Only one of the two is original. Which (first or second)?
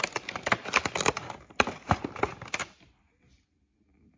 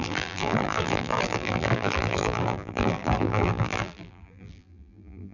first